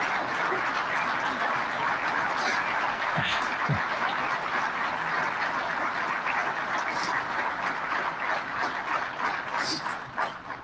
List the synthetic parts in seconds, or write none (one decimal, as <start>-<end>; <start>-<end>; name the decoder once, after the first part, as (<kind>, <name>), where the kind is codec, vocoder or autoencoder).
2.9-3.5 (codec, SNAC)

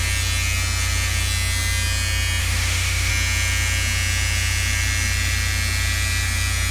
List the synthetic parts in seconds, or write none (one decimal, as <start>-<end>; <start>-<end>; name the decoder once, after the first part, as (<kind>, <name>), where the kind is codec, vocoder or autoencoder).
2.4-3.1 (autoencoder, DAC-VAE)